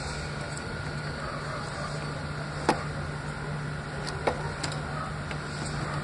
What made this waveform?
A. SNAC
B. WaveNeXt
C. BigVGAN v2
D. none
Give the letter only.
D